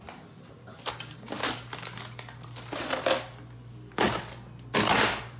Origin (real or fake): real